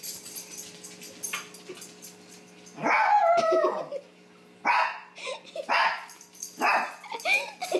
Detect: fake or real real